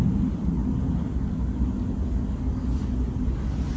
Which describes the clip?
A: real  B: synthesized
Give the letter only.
A